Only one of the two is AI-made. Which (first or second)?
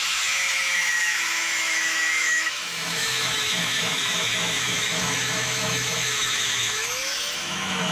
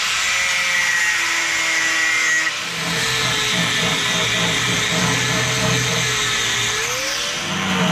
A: first